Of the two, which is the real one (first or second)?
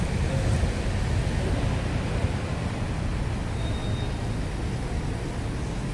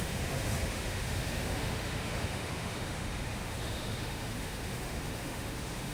first